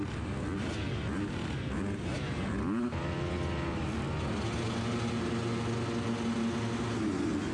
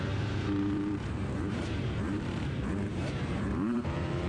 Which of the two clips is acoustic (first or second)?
first